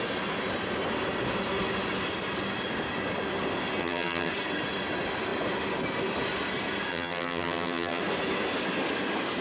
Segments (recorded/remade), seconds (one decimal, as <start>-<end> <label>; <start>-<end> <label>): 0.0-3.8 recorded; 3.8-4.3 remade; 4.3-6.9 recorded; 6.9-8.0 remade; 8.0-9.4 recorded